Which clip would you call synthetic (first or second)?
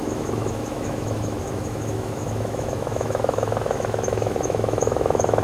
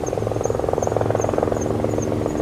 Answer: first